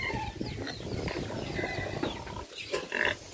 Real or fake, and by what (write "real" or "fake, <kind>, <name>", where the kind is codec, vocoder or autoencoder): real